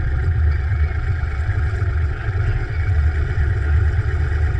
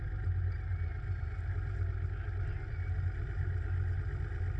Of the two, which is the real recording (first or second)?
second